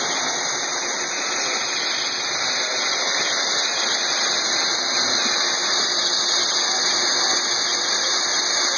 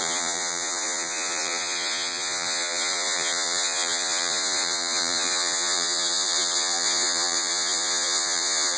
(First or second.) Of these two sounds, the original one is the first